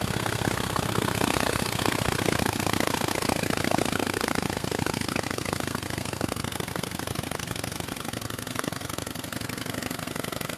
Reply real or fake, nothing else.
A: fake